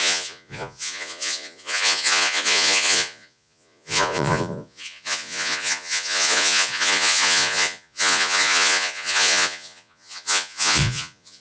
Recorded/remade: remade